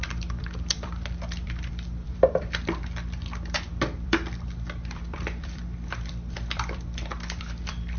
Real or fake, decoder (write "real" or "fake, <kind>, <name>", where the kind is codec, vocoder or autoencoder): fake, vocoder, BigVGAN v2